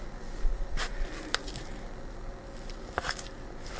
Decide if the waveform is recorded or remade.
recorded